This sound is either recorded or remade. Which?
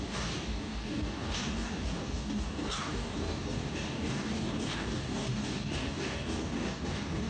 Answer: remade